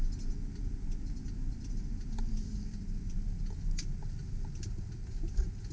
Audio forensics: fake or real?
real